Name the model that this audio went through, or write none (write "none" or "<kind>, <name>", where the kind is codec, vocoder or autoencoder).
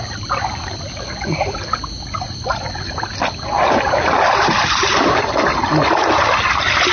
none